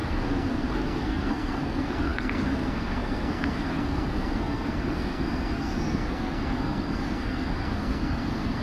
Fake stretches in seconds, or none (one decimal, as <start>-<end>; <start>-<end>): 0.0-8.6